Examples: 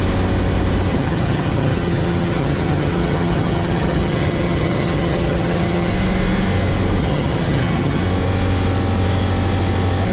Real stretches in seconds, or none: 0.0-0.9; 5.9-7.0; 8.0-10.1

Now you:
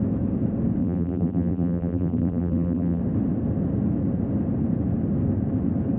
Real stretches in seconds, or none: 0.0-0.8; 3.0-6.0

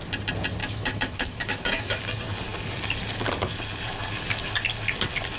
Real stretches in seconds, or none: 0.0-0.6; 2.0-5.4

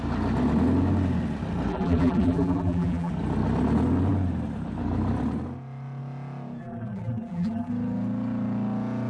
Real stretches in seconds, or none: 0.0-1.7; 3.1-6.6; 7.7-9.1